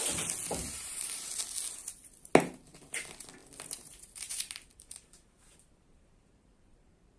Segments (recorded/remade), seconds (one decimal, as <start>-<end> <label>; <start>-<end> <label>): 0.0-0.6 recorded; 0.6-1.3 remade; 1.3-3.4 recorded; 3.4-7.2 remade